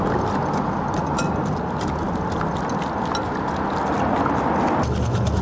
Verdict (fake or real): real